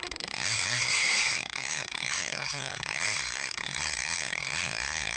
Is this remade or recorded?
remade